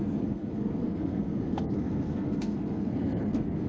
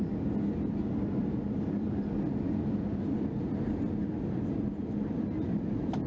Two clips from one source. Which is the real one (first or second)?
second